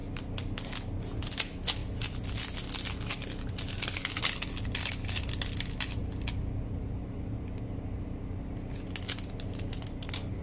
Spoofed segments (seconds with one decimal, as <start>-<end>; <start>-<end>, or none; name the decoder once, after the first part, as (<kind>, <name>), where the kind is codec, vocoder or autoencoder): none